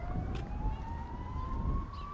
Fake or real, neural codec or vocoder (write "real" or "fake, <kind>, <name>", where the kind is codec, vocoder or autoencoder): real